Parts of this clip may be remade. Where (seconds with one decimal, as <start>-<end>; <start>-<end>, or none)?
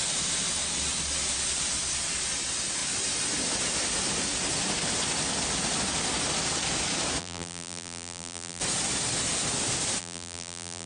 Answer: 7.2-8.6; 10.0-10.9